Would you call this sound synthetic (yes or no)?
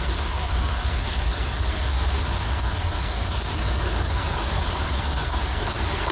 yes